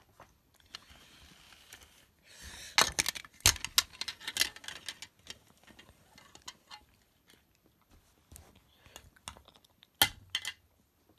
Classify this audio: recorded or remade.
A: recorded